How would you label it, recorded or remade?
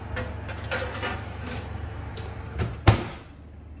recorded